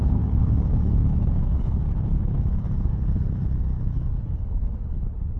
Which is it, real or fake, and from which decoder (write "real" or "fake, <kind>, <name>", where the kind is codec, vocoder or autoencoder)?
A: fake, codec, HILCodec